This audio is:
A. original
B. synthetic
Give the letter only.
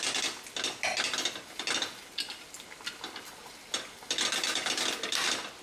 A